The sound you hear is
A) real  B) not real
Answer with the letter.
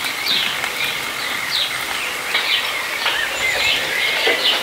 A